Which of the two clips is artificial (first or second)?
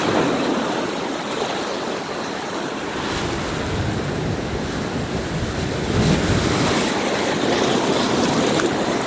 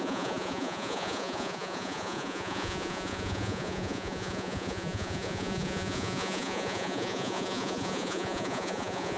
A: second